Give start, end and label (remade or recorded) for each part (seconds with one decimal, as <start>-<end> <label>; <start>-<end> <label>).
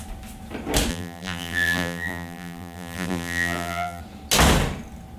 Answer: 0.0-0.9 recorded; 0.9-4.0 remade; 4.0-5.2 recorded